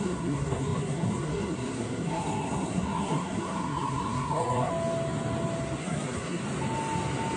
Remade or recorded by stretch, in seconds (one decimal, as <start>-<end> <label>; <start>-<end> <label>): 0.0-4.7 remade; 4.7-5.8 recorded; 5.8-6.4 remade; 6.4-7.4 recorded